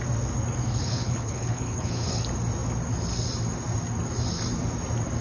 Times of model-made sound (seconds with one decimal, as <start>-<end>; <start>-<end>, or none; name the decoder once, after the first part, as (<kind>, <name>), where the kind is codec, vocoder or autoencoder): 0.6-2.2 (codec, HILCodec)